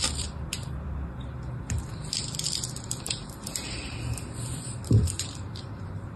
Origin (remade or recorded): remade